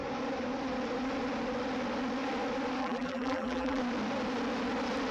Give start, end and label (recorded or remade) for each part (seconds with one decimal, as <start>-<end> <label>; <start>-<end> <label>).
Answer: 0.0-2.8 recorded; 2.8-3.8 remade; 3.8-5.1 recorded